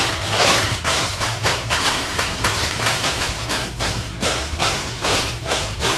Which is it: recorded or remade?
remade